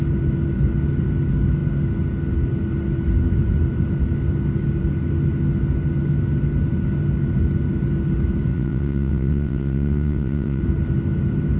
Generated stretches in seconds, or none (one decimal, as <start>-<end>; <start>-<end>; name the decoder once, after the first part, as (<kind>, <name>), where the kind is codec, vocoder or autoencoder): 8.5-10.6 (vocoder, WaveNeXt)